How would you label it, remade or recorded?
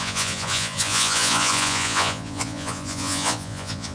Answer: remade